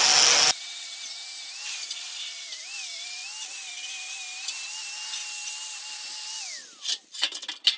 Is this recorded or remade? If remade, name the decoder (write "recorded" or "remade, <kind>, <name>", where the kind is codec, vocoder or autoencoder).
recorded